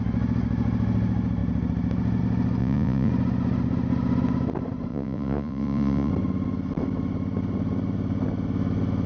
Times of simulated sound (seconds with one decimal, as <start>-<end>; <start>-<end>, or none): 2.6-3.1; 4.9-6.1